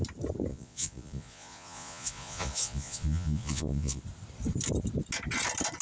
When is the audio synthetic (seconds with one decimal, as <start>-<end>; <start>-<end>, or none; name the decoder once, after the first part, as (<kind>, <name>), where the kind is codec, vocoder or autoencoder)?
0.5-4.0 (vocoder, Vocos)